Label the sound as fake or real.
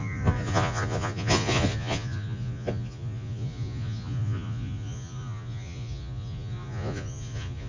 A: fake